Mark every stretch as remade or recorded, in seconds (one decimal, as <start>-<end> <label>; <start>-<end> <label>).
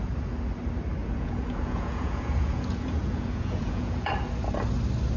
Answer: 0.0-1.0 recorded; 1.0-4.1 remade; 4.1-5.2 recorded